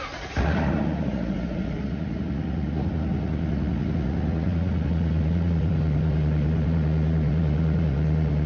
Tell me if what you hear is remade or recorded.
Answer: remade